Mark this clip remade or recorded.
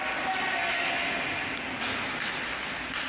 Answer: recorded